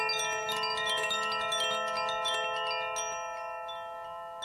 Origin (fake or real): real